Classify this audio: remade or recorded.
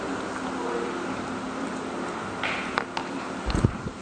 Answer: recorded